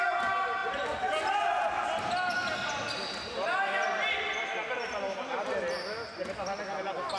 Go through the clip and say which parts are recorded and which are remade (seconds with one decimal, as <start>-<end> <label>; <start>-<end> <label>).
0.0-7.2 recorded